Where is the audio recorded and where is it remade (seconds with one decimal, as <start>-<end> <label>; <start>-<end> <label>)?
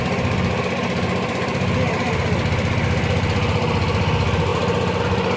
0.0-5.4 recorded